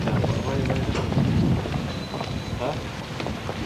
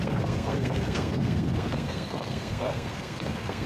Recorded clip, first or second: first